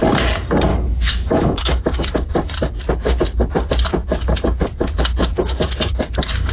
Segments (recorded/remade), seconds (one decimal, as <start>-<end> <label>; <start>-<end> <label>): 0.0-0.7 recorded; 0.7-2.0 remade; 2.0-6.5 recorded